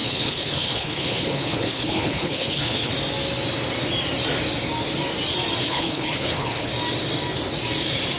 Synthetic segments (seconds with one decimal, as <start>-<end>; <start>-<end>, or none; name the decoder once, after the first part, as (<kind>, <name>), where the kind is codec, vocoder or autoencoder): 0.0-2.9 (codec, HILCodec); 5.6-6.7